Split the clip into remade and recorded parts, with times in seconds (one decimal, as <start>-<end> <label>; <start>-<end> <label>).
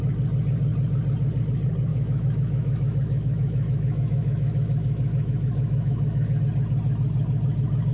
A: 0.0-1.9 recorded; 1.9-6.4 remade; 6.4-7.9 recorded